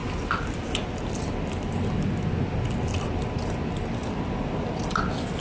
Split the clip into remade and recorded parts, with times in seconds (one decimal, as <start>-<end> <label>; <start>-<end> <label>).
0.0-5.4 recorded